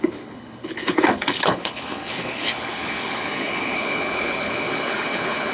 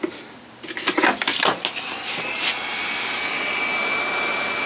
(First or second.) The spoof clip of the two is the first